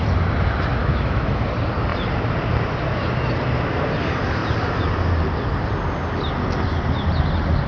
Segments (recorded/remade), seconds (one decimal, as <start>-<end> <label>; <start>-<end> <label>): 0.0-0.8 recorded; 0.8-1.4 remade; 1.4-7.7 recorded